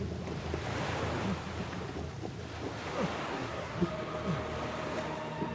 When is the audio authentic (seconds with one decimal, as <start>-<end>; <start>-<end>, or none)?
0.0-3.3; 3.9-5.5